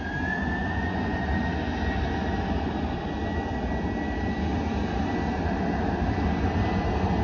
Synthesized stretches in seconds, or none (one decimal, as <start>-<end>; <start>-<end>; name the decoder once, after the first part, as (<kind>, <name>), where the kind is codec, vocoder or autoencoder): 0.6-1.2 (vocoder, Vocos)